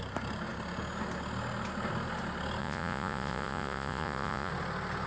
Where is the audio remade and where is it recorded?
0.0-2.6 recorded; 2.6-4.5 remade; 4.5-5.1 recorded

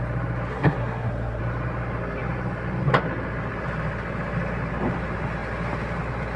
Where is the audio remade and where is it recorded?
0.0-0.5 recorded; 0.5-1.4 remade; 1.4-6.4 recorded

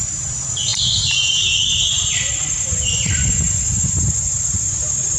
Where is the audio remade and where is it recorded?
0.0-5.2 recorded